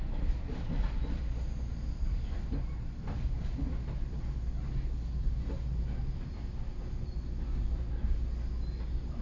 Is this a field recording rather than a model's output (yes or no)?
yes